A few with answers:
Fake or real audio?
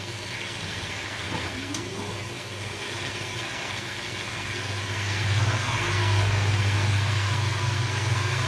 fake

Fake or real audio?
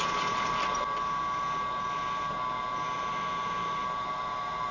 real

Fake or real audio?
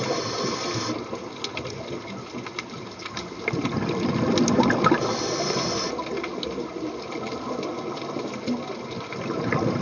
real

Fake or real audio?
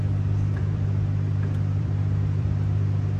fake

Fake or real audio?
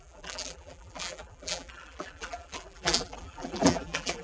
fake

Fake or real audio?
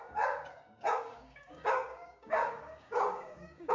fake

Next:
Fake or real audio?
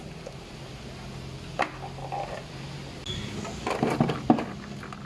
real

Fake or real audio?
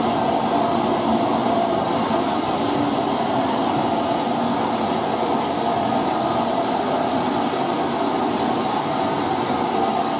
real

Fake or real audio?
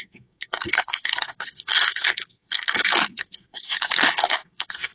fake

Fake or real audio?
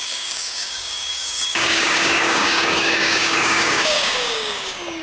fake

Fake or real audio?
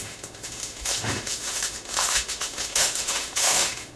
fake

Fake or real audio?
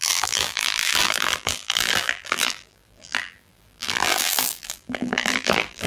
fake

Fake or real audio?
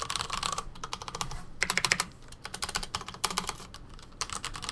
fake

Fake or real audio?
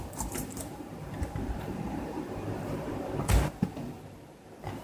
fake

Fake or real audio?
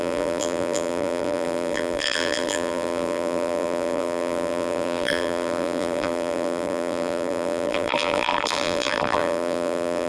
fake